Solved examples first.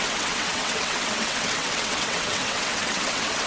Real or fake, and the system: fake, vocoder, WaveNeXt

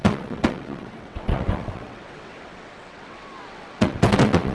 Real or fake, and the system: fake, vocoder, WaveNeXt